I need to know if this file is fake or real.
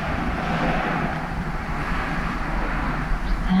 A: real